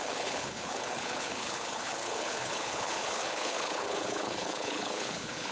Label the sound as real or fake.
fake